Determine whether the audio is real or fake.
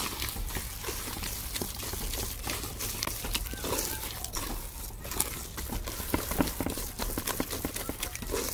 real